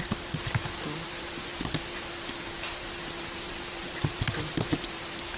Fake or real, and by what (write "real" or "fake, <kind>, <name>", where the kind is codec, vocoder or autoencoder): fake, vocoder, BigVGAN v2